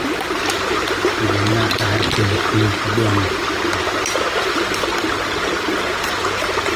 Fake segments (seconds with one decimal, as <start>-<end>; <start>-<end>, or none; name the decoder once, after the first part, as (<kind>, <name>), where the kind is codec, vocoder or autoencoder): none